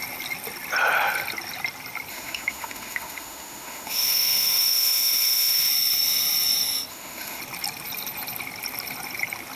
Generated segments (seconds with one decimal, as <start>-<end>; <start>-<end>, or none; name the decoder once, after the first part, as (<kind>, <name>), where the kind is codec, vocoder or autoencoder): 2.1-5.7 (autoencoder, DAC-VAE); 6.9-7.4